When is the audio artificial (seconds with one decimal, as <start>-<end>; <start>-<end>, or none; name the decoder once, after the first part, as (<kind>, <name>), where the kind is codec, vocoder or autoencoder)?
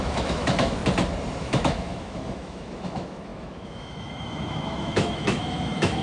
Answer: 0.0-0.8 (autoencoder, DAC-VAE); 1.4-6.0